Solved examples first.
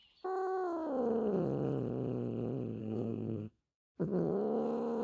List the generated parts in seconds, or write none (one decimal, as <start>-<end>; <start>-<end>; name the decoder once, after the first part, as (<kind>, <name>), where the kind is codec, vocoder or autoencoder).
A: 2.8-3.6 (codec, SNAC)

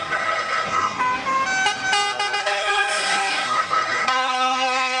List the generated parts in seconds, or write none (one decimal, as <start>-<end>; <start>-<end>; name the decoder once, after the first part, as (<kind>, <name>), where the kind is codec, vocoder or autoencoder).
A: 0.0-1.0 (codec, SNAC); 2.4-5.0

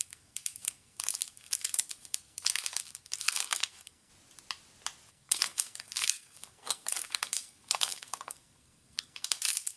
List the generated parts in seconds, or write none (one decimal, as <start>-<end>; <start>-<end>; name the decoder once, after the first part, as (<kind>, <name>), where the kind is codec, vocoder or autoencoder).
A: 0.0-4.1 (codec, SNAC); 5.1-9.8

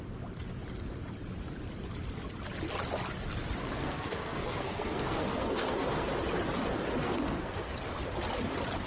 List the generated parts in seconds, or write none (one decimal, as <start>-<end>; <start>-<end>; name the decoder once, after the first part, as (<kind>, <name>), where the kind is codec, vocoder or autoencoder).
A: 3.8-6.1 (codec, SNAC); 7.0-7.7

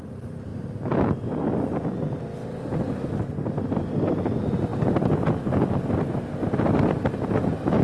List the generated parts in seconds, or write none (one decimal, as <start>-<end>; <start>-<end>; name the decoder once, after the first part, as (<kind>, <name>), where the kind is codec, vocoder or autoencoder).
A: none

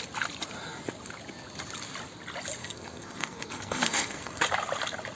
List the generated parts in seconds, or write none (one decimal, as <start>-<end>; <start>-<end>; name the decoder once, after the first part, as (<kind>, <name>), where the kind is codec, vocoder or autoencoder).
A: 2.6-4.4 (codec, SNAC)